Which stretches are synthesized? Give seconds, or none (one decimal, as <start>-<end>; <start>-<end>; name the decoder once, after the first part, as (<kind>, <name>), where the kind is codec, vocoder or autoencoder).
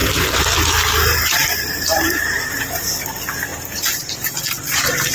0.0-0.6 (vocoder, BigVGAN v2); 1.4-3.0; 3.5-4.4